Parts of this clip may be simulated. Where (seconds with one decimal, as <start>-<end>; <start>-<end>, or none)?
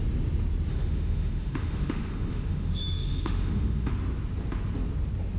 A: 0.7-3.9